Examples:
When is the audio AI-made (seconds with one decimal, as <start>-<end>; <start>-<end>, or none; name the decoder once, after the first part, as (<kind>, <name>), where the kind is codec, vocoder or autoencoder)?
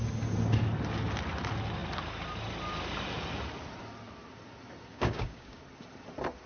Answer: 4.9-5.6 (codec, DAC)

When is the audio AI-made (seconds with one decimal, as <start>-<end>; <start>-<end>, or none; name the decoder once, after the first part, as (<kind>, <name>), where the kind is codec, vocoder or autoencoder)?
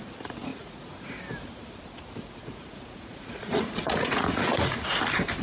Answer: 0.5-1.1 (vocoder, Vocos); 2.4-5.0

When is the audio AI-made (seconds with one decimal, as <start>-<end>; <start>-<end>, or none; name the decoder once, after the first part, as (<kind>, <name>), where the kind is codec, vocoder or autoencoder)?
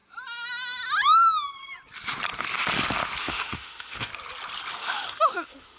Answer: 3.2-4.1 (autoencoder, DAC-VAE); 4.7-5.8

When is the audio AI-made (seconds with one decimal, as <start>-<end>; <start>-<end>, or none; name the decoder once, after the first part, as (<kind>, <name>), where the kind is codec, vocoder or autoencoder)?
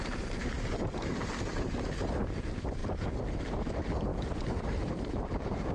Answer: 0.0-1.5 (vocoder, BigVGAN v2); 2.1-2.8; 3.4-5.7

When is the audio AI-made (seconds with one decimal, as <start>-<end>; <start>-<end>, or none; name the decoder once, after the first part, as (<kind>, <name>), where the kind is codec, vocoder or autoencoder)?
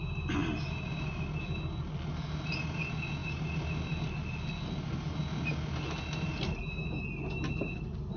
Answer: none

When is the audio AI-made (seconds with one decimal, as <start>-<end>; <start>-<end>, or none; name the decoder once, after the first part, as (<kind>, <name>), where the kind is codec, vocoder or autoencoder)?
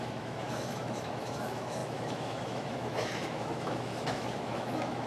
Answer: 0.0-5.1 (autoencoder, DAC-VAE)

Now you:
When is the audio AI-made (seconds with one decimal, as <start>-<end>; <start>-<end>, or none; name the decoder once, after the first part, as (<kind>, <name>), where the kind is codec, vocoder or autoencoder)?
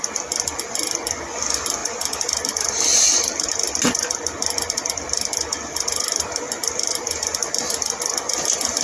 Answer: none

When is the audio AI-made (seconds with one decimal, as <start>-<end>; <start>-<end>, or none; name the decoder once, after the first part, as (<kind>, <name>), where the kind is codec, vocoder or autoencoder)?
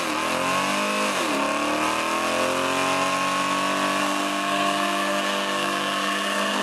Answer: 4.0-6.6 (codec, SNAC)